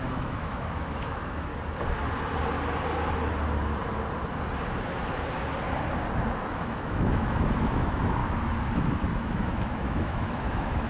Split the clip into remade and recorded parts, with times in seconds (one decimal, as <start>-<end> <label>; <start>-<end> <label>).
0.0-1.5 remade; 1.5-6.3 recorded; 6.3-8.2 remade; 8.2-8.7 recorded; 8.7-10.9 remade